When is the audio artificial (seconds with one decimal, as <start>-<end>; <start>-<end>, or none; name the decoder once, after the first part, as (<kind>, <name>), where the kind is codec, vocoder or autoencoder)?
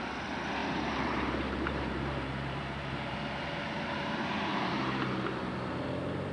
0.6-4.4 (vocoder, BigVGAN v2)